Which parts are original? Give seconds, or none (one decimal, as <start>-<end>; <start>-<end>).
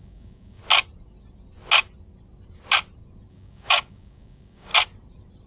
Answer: 0.6-3.3; 4.7-5.5